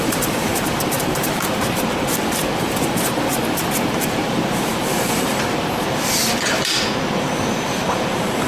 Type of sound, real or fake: fake